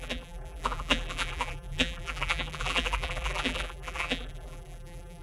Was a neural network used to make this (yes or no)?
yes